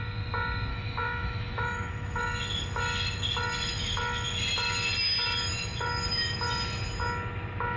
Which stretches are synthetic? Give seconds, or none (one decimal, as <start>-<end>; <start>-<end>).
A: 0.7-1.9